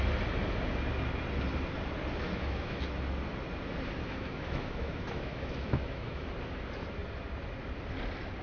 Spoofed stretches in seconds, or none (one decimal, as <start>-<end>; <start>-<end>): 2.2-2.8; 4.0-6.3